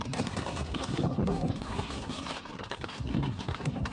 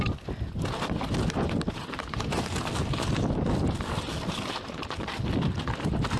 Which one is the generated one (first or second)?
first